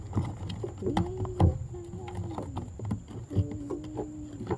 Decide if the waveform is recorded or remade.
recorded